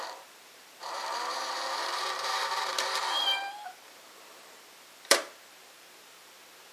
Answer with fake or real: fake